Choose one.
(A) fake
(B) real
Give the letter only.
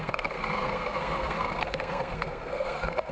A